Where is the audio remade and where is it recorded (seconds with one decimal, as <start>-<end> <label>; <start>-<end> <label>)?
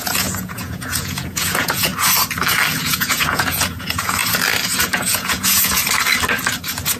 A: 0.0-1.9 remade; 1.9-2.8 recorded; 2.8-4.2 remade; 4.2-4.8 recorded; 4.8-5.8 remade; 5.8-7.0 recorded